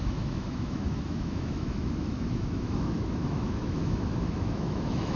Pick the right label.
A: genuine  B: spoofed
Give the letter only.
B